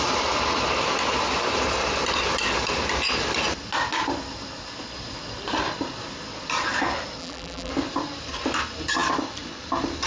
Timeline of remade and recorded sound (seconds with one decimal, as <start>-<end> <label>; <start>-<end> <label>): 0.0-7.2 recorded; 7.2-7.7 remade; 7.7-10.1 recorded